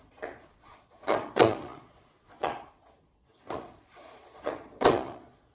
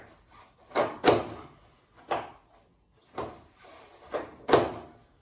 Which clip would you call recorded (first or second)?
second